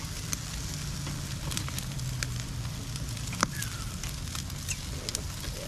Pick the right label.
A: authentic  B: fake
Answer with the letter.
A